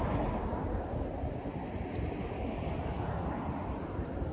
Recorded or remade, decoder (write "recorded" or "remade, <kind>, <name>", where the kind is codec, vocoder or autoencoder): recorded